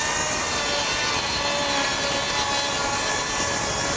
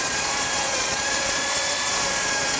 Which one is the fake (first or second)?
second